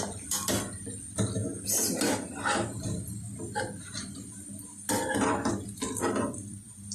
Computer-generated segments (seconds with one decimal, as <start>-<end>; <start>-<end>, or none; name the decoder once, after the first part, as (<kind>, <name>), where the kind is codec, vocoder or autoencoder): 0.0-1.4 (vocoder, BigVGAN v2); 5.5-6.9